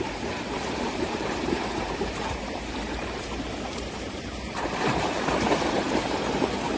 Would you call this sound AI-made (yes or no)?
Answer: yes